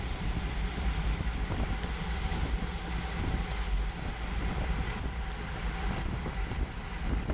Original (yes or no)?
yes